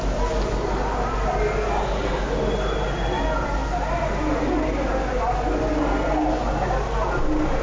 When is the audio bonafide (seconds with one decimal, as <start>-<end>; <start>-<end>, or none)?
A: 0.0-7.6